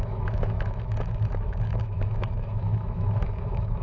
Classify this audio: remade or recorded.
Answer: remade